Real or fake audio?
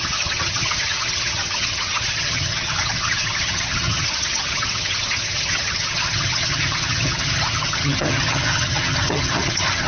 fake